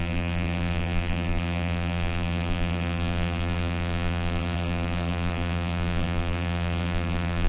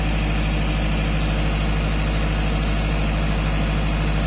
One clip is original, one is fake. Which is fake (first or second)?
first